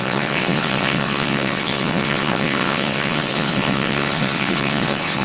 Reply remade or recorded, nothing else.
remade